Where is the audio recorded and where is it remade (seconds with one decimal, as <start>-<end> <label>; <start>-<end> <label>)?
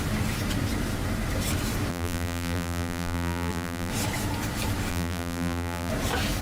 0.0-1.9 recorded; 1.9-3.9 remade; 3.9-4.9 recorded; 4.9-5.9 remade; 5.9-6.4 recorded